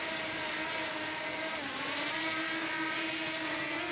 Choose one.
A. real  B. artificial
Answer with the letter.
A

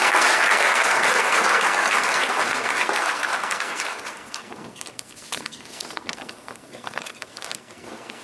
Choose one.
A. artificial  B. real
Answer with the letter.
A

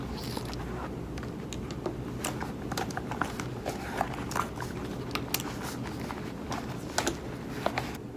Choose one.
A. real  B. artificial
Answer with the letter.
A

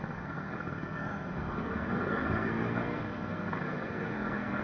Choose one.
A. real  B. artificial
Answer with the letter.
B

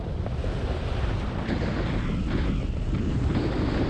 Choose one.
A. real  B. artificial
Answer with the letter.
A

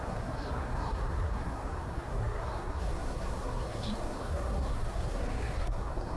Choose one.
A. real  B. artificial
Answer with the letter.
B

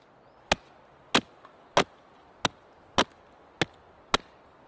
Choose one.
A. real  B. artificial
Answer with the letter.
A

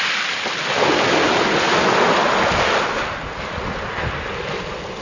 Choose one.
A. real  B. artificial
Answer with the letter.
A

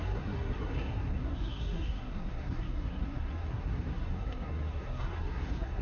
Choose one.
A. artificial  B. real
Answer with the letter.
A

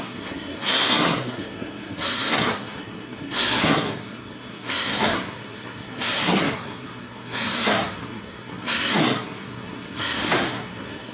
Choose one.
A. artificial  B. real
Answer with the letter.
A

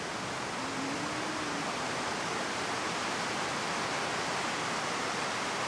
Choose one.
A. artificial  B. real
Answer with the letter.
B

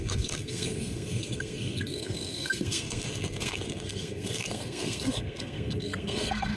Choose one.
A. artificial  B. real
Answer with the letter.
A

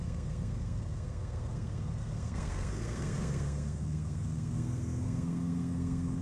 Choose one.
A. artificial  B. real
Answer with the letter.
A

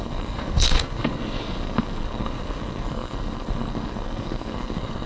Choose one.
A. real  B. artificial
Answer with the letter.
B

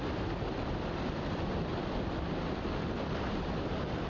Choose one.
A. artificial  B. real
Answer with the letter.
B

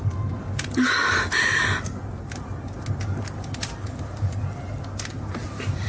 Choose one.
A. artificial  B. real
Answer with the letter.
B